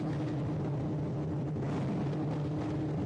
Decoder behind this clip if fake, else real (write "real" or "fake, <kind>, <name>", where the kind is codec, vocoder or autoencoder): real